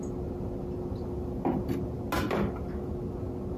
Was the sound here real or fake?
real